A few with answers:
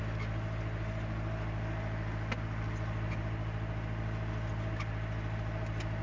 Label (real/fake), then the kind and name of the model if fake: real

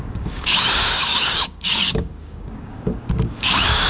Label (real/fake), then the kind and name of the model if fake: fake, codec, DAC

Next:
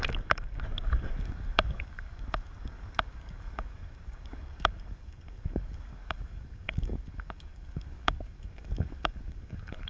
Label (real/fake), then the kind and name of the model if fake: fake, codec, DAC